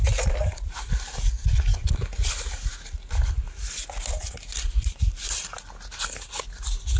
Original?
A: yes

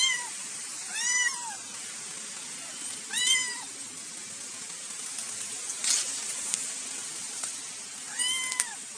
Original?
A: yes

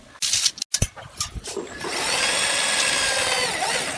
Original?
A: yes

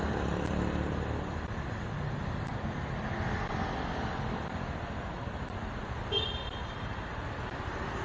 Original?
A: yes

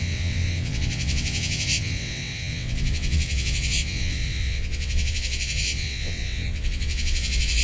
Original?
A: no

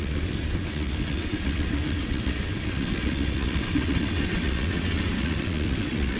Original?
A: no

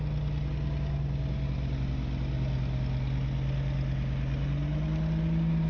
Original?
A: yes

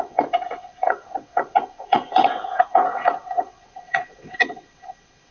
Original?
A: no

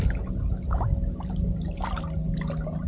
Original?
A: yes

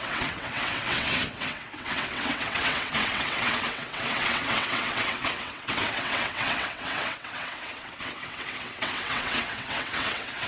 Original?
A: no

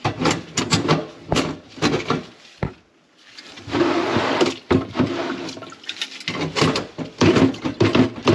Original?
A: yes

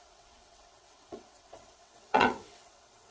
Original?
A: no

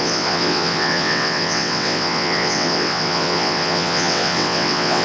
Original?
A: no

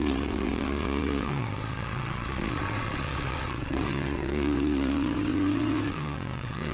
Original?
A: no